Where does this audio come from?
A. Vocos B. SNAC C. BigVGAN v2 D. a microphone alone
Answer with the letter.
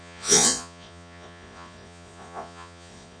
A